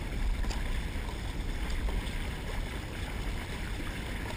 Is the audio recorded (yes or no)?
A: yes